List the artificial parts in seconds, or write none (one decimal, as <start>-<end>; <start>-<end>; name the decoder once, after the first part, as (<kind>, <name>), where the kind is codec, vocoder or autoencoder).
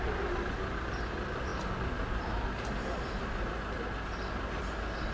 none